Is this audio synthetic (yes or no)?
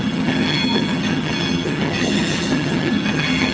yes